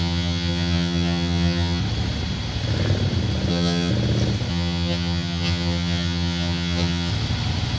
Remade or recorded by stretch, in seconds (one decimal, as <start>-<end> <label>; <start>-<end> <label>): 0.0-1.8 remade; 1.8-3.5 recorded; 3.5-3.9 remade; 3.9-4.5 recorded; 4.5-7.1 remade; 7.1-7.8 recorded

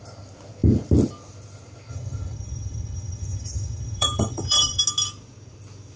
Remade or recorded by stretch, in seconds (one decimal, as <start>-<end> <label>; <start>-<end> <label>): 0.0-1.9 recorded; 1.9-4.8 remade; 4.8-6.0 recorded

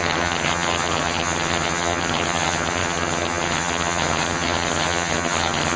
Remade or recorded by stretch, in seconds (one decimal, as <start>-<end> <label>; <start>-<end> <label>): 0.0-5.8 remade

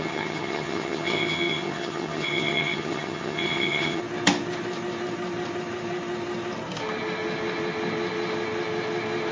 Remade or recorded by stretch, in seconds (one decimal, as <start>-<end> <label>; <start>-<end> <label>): 0.0-4.0 remade; 4.0-9.3 recorded

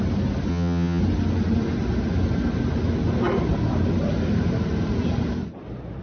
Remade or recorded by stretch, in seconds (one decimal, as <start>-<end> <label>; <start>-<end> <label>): 0.0-0.5 recorded; 0.5-1.0 remade; 1.0-6.0 recorded

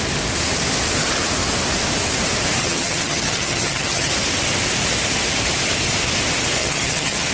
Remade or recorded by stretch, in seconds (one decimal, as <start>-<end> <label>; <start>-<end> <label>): 0.0-2.6 recorded; 2.6-4.1 remade; 4.1-6.6 recorded; 6.6-7.3 remade

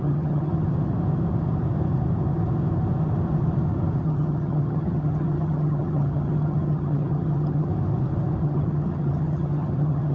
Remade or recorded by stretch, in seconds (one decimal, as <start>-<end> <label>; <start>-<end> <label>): 0.0-0.5 remade; 0.5-4.0 recorded; 4.0-7.7 remade; 7.7-8.4 recorded; 8.4-10.1 remade

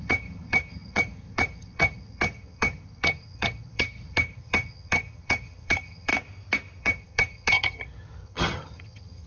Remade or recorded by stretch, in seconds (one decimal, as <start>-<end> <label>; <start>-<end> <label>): 0.0-6.1 remade; 6.1-6.8 recorded; 6.8-9.3 remade